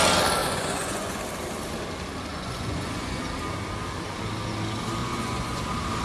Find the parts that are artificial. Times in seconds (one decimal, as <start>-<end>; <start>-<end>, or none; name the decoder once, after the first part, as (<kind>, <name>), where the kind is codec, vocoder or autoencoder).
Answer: 0.4-1.2 (vocoder, Vocos); 2.3-3.2; 5.0-5.6